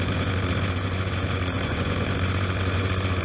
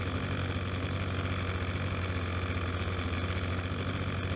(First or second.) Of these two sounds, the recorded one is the second